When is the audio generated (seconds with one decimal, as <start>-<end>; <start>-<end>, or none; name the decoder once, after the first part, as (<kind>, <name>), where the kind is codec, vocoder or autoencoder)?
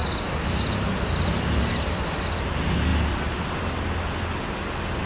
none